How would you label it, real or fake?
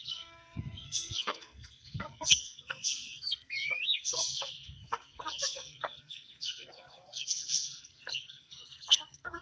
fake